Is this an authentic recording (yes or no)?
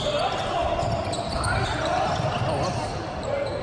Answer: yes